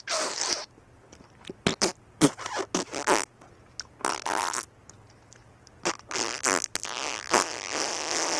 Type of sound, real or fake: real